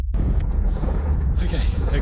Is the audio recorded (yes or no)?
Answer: no